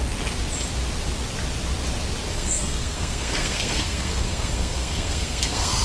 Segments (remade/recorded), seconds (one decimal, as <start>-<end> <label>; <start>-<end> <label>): 0.0-2.3 recorded; 2.3-5.8 remade